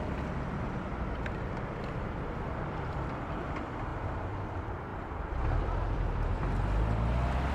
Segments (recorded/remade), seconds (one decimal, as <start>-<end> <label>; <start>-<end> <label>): 0.0-3.9 remade; 3.9-4.5 recorded; 4.5-4.9 remade; 4.9-5.6 recorded; 5.6-7.5 remade